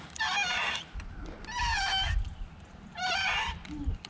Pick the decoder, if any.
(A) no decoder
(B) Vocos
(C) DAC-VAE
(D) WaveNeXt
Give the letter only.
A